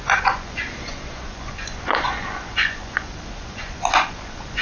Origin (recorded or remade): remade